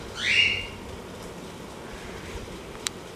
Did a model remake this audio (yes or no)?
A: yes